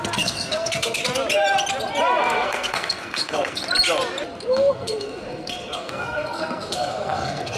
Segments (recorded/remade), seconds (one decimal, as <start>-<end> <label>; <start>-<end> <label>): 0.0-1.0 remade; 1.0-2.2 recorded; 2.2-3.6 remade; 3.6-4.5 recorded; 4.5-7.6 remade